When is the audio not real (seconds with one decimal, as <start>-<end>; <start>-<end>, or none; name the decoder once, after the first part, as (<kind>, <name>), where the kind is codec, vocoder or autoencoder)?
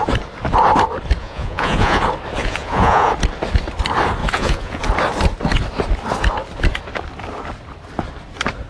1.2-2.0 (vocoder, Vocos); 2.4-3.1; 4.2-4.8